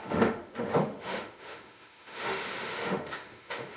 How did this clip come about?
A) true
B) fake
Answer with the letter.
B